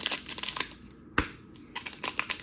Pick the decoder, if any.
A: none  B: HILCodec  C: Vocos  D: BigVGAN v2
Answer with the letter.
A